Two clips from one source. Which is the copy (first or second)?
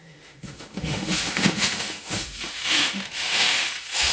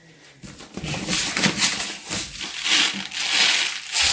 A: first